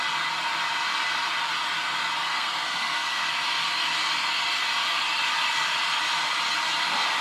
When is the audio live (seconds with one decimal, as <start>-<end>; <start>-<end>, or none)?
0.0-2.2; 3.3-7.2